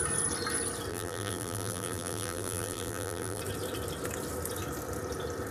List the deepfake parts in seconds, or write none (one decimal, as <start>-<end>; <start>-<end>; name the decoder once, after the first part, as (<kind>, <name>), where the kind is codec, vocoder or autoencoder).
0.9-3.4 (vocoder, BigVGAN v2)